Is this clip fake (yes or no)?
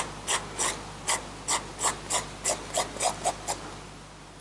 no